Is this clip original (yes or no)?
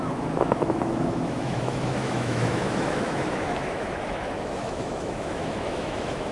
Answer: no